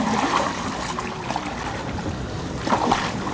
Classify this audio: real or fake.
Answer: real